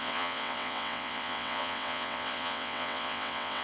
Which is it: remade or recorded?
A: remade